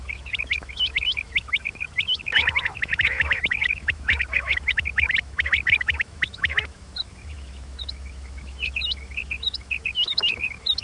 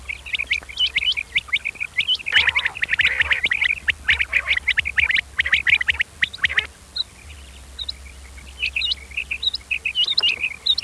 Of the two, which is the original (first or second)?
second